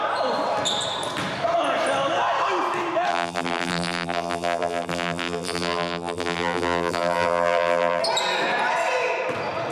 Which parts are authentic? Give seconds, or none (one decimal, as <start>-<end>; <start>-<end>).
0.0-3.1; 8.0-9.7